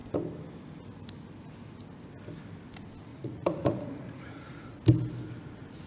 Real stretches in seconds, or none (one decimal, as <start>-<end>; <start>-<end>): 0.0-3.1; 4.8-5.9